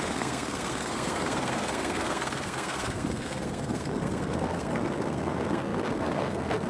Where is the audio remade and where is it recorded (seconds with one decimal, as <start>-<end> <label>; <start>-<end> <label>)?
0.0-6.7 remade